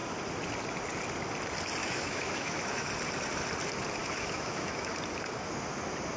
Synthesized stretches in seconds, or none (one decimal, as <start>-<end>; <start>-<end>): 1.8-2.9; 4.0-4.9